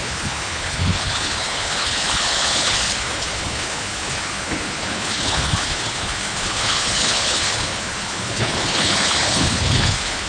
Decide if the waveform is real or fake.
fake